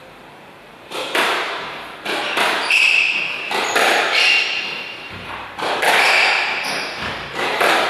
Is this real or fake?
fake